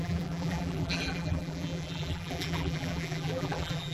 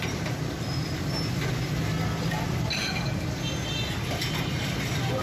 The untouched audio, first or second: second